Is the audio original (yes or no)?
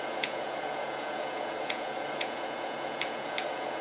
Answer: no